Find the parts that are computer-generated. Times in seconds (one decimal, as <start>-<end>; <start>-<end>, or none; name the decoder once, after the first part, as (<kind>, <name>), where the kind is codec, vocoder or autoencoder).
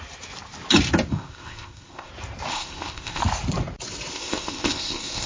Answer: 1.1-2.1 (codec, ZipCodec); 2.5-3.2; 4.1-5.3